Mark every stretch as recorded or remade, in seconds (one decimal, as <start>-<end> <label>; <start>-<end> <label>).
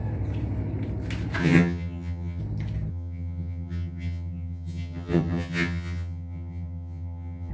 0.0-1.4 recorded; 1.4-2.4 remade; 2.4-2.9 recorded; 2.9-7.5 remade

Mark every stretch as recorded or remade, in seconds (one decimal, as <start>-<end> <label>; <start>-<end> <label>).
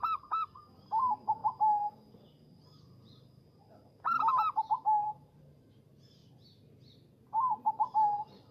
0.0-1.4 remade; 1.4-5.0 recorded; 5.0-6.2 remade; 6.2-7.6 recorded; 7.6-8.5 remade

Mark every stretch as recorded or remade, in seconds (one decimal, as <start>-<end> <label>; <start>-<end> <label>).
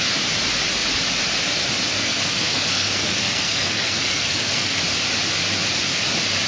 0.0-1.9 recorded; 1.9-4.8 remade; 4.8-6.5 recorded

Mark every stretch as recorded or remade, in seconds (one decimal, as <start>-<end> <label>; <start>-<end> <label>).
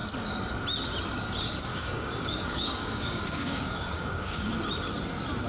0.0-1.7 recorded; 1.7-4.6 remade; 4.6-5.5 recorded